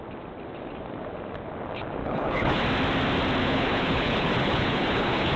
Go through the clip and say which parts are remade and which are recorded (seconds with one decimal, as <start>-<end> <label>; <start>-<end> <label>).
0.0-2.0 recorded; 2.0-2.6 remade; 2.6-3.4 recorded; 3.4-5.4 remade